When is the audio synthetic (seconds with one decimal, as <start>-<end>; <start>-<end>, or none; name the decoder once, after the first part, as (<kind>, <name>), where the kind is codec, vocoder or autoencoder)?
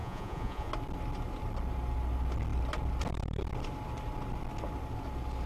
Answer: 0.0-0.7 (vocoder, Vocos)